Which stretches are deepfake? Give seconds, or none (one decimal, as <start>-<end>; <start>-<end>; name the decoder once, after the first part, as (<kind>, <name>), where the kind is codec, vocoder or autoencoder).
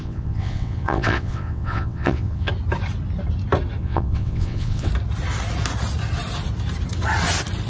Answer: 0.0-2.5 (vocoder, WaveNeXt); 3.8-4.9